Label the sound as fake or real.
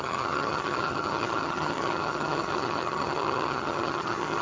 fake